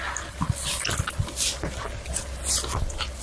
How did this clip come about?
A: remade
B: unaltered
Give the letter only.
B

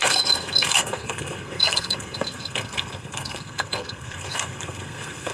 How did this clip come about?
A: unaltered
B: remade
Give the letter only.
B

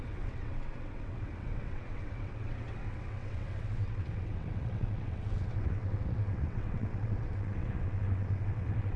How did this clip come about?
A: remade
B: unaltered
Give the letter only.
A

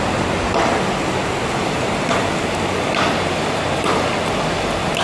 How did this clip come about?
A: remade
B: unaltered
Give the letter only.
B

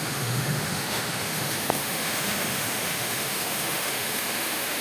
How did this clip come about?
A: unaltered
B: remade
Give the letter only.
B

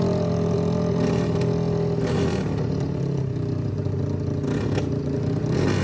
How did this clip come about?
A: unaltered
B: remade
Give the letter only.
A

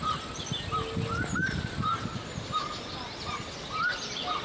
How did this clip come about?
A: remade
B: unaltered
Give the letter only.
B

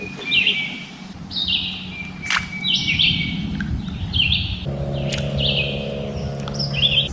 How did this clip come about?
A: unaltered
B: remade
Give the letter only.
A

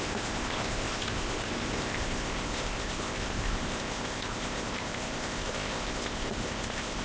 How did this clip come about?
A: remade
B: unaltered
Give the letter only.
A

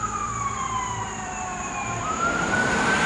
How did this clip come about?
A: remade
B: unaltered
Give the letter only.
A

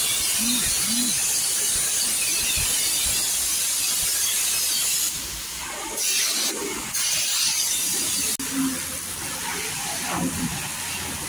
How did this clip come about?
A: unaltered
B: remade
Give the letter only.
A